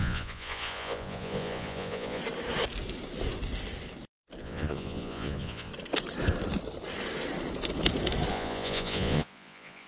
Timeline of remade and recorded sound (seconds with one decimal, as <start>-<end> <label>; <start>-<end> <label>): 0.0-2.2 remade; 2.2-4.4 recorded; 4.4-5.7 remade; 5.7-8.3 recorded; 8.3-9.9 remade